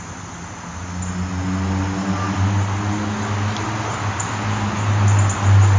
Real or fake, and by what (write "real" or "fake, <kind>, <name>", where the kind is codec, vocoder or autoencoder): real